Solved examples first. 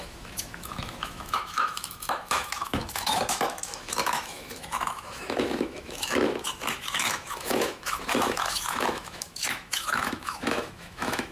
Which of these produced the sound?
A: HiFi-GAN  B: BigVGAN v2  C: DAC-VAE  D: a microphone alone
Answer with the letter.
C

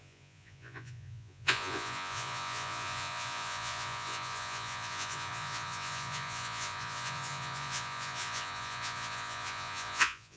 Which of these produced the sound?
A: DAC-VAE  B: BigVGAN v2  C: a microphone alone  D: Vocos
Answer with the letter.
D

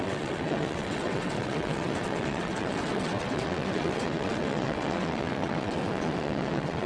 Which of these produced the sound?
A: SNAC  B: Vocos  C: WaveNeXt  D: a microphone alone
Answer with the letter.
C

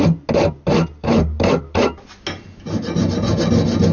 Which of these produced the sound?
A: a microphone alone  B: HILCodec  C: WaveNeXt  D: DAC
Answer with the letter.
A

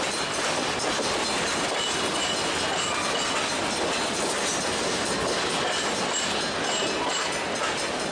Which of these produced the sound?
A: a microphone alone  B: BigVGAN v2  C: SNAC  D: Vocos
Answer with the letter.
A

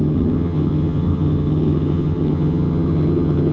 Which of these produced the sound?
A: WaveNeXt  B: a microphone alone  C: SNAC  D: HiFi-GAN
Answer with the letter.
D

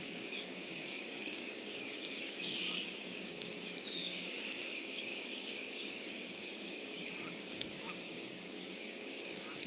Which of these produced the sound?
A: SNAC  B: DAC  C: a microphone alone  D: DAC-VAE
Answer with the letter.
B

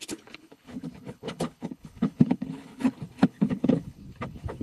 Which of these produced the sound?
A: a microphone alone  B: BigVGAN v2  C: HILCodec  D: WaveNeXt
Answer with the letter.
C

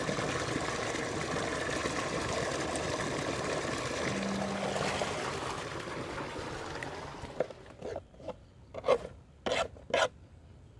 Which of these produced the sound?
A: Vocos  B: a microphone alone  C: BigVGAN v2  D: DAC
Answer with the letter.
B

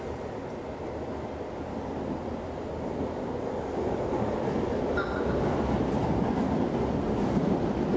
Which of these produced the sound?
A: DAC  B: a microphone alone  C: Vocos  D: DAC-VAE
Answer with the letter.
B